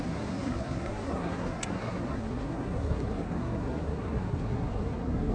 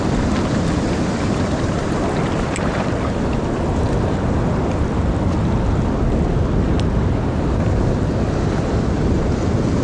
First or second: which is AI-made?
first